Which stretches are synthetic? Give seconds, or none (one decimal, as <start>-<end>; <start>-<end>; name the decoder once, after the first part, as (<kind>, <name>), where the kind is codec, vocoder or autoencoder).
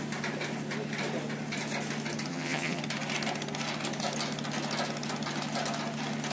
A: 2.3-2.8 (vocoder, HiFi-GAN)